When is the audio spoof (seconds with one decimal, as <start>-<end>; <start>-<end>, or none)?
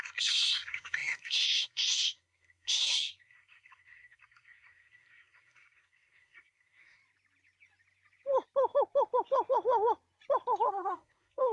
0.0-7.0; 10.7-11.5